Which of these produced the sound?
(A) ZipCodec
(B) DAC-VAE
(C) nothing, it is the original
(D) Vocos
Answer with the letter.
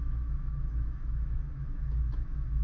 B